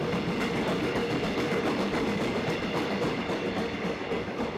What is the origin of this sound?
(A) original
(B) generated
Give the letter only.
B